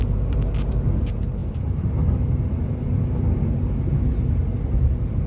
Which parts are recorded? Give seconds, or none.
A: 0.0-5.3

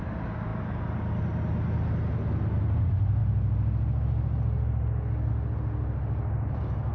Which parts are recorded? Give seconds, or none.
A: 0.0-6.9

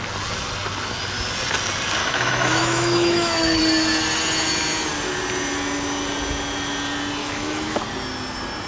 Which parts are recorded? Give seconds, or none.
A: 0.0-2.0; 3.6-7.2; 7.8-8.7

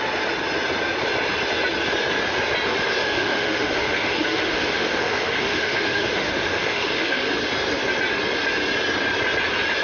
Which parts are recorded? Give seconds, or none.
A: 0.0-3.0; 7.3-9.8

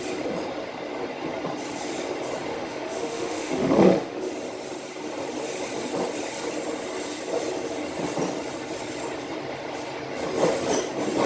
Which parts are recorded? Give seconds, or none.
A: 0.0-2.5; 4.3-11.3

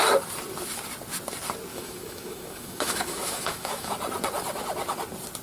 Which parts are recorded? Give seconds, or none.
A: 0.0-1.7; 3.9-5.4

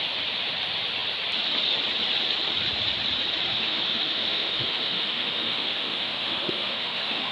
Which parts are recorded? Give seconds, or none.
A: 0.0-3.5

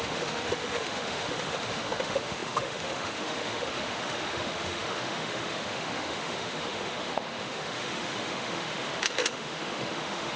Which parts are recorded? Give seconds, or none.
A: none